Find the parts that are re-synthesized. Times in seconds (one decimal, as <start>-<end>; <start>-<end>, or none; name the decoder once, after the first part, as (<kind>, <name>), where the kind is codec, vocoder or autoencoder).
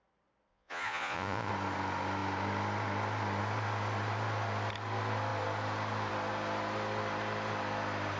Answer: 0.5-1.5 (vocoder, Vocos)